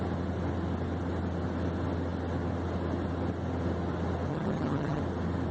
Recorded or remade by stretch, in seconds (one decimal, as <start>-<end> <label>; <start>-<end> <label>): 0.0-4.3 recorded; 4.3-5.0 remade; 5.0-5.5 recorded